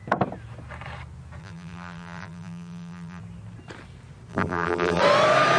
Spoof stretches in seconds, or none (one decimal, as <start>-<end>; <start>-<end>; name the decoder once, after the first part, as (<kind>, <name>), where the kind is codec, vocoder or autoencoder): 1.4-3.2 (vocoder, BigVGAN v2); 4.3-5.0